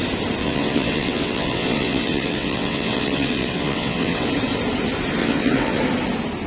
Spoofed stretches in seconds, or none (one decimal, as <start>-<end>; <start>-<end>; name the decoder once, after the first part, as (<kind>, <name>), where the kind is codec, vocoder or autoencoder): 0.4-4.3 (vocoder, WaveNeXt); 5.2-5.8